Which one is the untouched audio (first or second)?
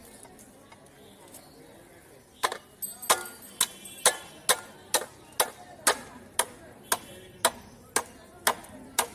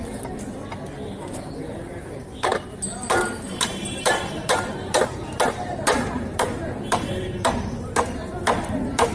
first